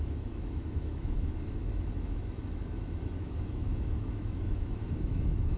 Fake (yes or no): yes